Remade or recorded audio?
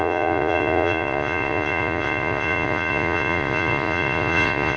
remade